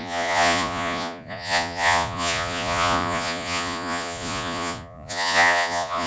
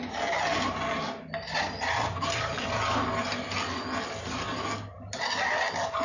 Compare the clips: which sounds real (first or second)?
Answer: second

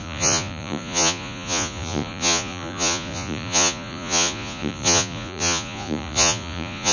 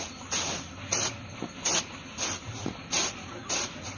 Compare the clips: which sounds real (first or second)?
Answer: second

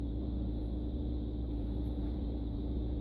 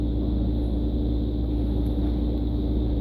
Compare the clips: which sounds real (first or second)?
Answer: second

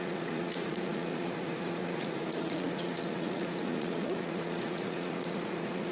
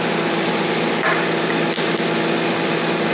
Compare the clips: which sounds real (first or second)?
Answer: second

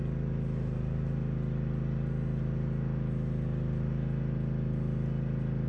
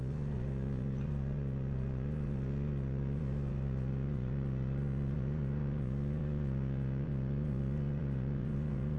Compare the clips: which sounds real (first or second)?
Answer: first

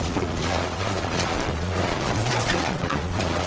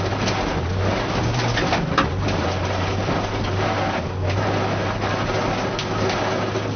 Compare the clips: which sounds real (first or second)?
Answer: second